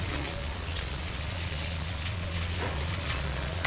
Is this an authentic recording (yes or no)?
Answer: no